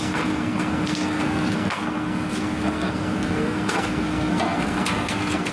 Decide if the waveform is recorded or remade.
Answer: remade